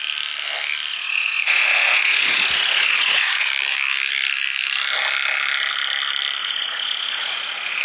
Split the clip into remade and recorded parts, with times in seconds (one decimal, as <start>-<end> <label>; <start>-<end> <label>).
0.0-0.9 recorded; 0.9-3.5 remade; 3.5-6.4 recorded; 6.4-7.8 remade

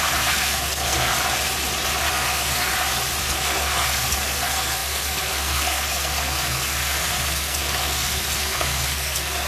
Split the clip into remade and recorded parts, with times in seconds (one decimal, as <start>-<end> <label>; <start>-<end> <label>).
0.0-1.1 remade; 1.1-2.1 recorded; 2.1-2.7 remade; 2.7-3.2 recorded; 3.2-9.5 remade

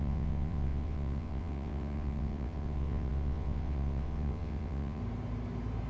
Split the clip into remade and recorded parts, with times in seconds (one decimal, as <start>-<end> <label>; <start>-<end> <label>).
0.0-5.0 remade; 5.0-5.9 recorded

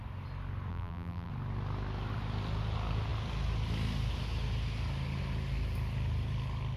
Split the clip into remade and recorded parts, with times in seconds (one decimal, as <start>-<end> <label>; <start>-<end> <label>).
0.0-0.7 recorded; 0.7-1.3 remade; 1.3-6.8 recorded

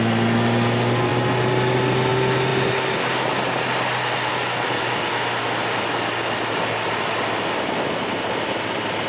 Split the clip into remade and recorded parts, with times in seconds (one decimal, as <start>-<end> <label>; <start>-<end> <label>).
0.0-9.1 recorded

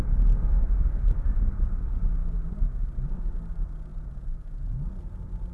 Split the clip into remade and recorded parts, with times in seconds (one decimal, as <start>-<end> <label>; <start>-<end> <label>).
0.0-3.9 recorded; 3.9-4.6 remade; 4.6-5.5 recorded